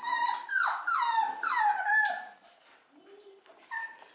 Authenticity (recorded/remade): remade